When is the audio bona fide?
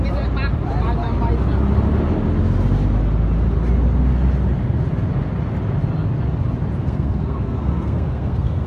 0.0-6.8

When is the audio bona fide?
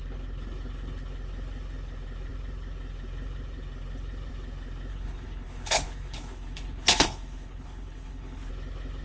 0.0-4.9; 8.5-9.0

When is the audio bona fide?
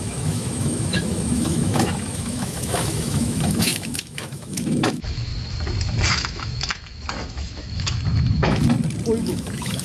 5.3-6.1; 8.6-9.2